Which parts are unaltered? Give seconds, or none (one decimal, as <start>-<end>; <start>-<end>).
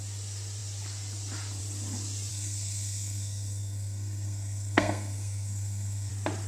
0.0-2.3; 6.1-6.5